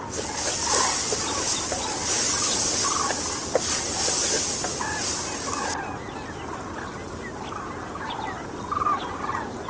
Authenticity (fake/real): real